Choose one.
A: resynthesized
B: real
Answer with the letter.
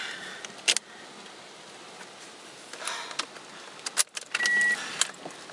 B